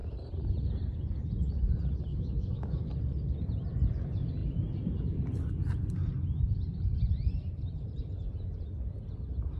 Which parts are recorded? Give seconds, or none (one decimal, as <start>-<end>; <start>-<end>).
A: 0.0-2.1; 2.9-9.6